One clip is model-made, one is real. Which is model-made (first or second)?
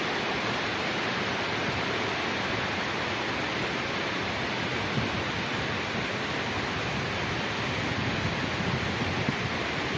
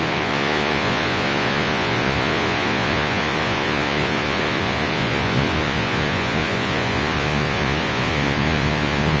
second